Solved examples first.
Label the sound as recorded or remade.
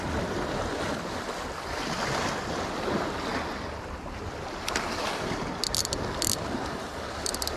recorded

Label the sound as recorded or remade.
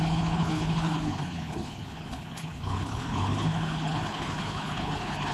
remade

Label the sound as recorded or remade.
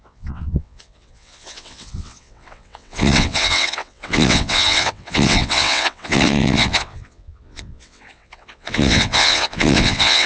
remade